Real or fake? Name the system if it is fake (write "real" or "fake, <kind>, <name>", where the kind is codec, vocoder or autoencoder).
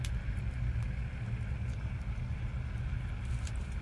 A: real